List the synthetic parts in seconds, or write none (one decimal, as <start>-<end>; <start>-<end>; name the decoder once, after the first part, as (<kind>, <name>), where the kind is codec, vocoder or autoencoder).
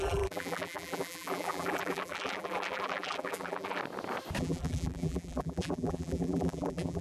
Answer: 0.0-3.8 (vocoder, BigVGAN v2); 4.4-7.0